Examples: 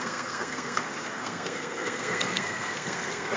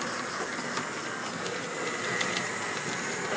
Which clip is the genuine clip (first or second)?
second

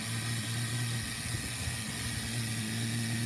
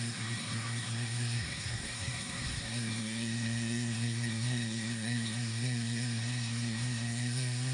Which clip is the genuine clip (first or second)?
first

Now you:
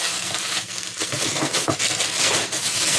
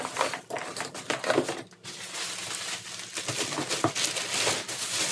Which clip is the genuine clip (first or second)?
second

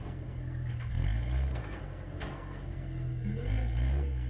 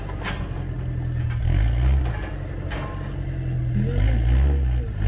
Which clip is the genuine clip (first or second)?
second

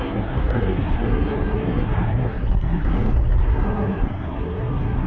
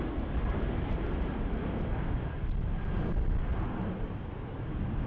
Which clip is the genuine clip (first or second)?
second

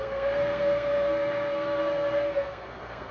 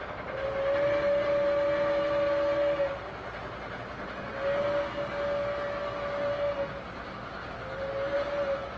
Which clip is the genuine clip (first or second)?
second